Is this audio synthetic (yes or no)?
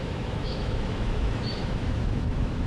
yes